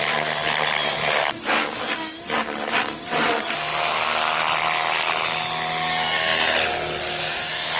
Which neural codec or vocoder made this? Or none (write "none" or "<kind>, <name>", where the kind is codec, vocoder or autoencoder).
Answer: none